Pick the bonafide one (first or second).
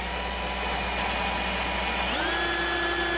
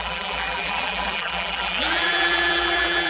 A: first